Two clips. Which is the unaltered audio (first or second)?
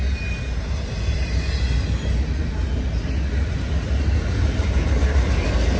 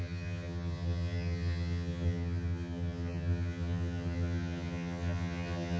first